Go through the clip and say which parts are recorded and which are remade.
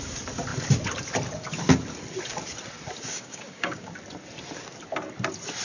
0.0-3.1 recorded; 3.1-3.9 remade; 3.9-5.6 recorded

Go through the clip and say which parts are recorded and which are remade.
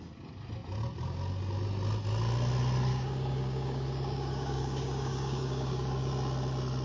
0.0-2.9 recorded; 2.9-6.1 remade; 6.1-6.8 recorded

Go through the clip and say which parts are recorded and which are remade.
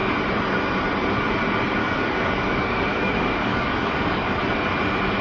0.0-1.8 recorded; 1.8-4.4 remade; 4.4-5.2 recorded